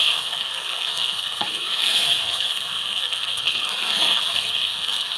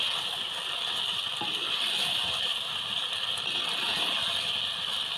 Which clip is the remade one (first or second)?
first